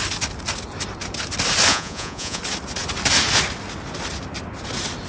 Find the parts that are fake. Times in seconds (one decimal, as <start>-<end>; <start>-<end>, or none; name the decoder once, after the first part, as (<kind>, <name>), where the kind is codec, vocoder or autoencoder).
1.7-2.4 (vocoder, Vocos)